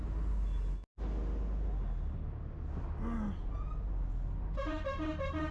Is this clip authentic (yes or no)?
yes